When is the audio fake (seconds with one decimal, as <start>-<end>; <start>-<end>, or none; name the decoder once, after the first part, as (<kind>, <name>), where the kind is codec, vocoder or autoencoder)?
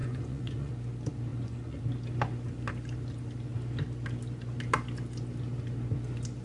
0.0-0.7 (vocoder, Vocos); 1.3-1.8